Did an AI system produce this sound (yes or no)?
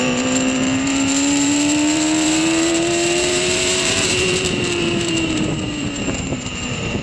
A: yes